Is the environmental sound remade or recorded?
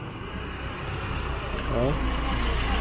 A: recorded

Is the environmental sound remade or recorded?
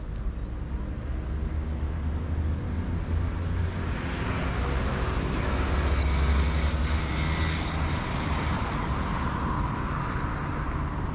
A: recorded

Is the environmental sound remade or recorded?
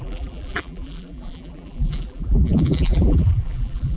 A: remade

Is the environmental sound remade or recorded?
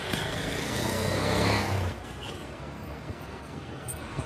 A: remade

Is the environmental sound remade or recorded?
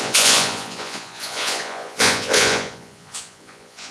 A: remade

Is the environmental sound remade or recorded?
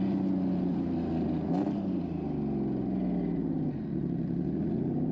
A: recorded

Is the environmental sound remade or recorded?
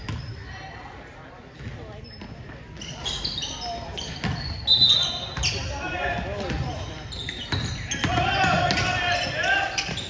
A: recorded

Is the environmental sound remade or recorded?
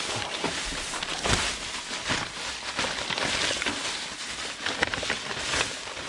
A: recorded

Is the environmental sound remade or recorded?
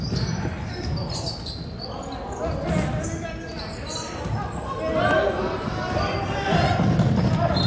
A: recorded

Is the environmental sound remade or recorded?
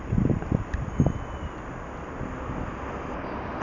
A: recorded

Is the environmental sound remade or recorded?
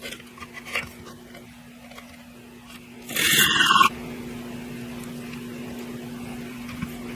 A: recorded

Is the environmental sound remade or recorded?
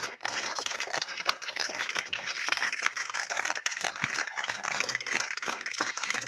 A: remade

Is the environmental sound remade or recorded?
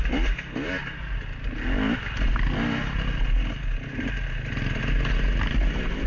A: recorded